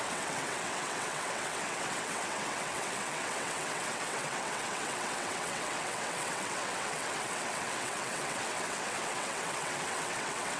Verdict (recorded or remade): remade